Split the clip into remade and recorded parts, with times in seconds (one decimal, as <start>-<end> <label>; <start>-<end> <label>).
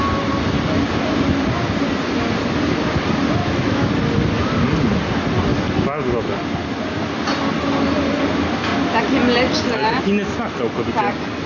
0.0-3.4 recorded; 3.4-3.9 remade; 3.9-11.5 recorded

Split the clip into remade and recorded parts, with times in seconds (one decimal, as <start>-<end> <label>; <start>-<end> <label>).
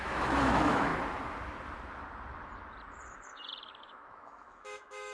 0.0-0.9 remade; 0.9-3.8 recorded; 3.8-5.1 remade